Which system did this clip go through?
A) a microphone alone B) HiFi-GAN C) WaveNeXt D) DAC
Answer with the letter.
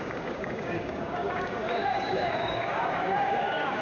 D